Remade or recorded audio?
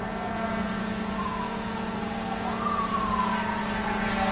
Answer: remade